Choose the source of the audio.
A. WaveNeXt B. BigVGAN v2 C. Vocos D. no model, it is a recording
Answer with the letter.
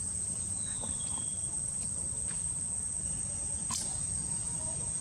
C